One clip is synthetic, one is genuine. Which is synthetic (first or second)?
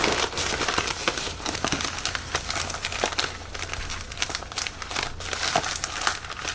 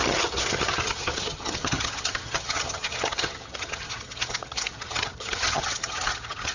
second